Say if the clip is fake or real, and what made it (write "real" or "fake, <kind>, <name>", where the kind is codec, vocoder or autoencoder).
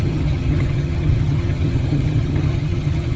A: fake, vocoder, HiFi-GAN